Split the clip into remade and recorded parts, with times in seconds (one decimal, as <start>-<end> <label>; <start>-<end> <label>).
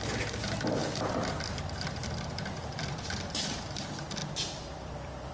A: 0.0-5.3 recorded